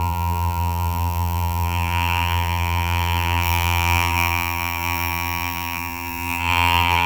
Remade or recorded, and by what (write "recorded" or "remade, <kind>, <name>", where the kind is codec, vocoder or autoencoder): remade, vocoder, BigVGAN v2